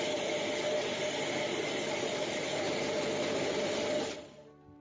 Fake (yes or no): no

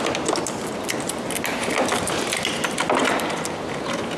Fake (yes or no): no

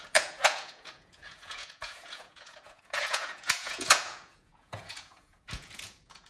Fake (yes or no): yes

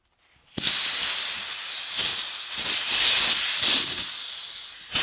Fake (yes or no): no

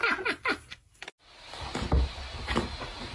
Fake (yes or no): no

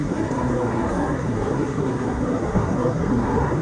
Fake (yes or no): yes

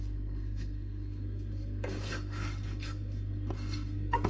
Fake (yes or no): yes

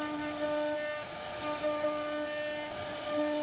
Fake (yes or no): no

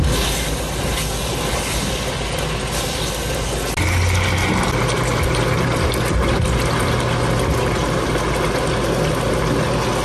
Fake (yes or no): no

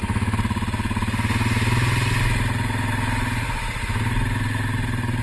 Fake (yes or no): no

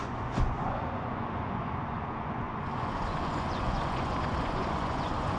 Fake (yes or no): yes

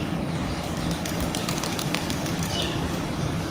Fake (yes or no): yes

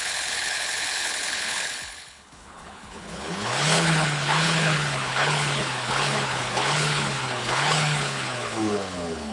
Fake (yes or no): yes